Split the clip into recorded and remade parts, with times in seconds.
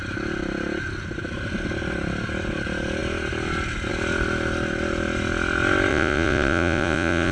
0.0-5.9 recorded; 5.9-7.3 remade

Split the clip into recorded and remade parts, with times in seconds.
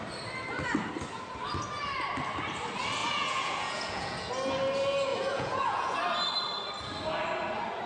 0.0-3.0 recorded; 3.0-4.3 remade; 4.3-5.1 recorded; 5.1-6.0 remade; 6.0-7.9 recorded